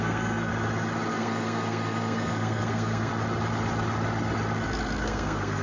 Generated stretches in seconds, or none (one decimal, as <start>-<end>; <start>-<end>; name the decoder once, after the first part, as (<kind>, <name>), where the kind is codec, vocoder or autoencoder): 0.0-0.5 (codec, SNAC); 1.1-3.1; 5.0-5.6